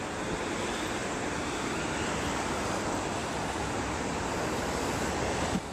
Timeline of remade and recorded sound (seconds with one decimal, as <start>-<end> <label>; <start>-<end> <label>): 0.0-1.0 recorded; 1.0-1.7 remade; 1.7-5.7 recorded